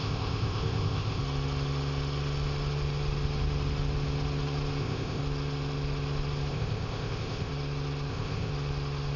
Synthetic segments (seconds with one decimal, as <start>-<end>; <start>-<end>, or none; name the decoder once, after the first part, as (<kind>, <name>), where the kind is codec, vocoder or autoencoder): 0.0-1.2 (codec, ZipCodec); 4.8-5.2; 6.5-7.5; 8.1-8.5